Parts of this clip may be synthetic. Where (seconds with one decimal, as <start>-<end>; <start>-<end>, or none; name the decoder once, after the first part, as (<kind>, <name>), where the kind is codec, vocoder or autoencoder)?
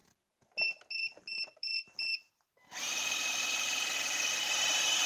none